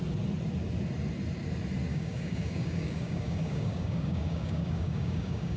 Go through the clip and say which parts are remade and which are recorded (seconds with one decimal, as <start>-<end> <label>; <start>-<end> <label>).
0.0-1.9 recorded; 1.9-5.6 remade